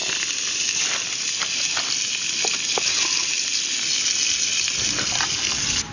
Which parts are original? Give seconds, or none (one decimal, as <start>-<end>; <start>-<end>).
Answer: 0.0-5.9